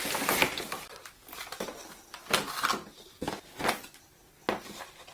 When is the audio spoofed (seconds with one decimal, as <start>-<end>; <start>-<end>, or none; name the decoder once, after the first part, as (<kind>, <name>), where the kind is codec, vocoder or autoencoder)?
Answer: none